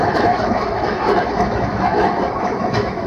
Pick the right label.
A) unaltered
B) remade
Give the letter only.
B